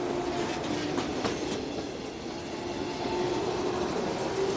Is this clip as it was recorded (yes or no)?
yes